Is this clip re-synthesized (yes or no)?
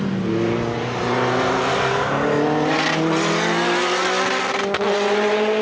no